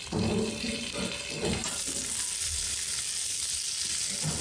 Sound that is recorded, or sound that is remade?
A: recorded